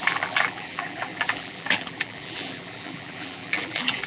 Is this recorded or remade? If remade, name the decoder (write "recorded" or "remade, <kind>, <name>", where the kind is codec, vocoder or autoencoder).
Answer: remade, vocoder, BigVGAN v2